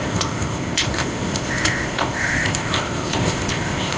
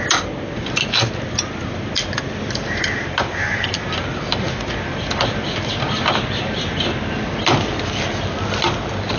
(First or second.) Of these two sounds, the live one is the second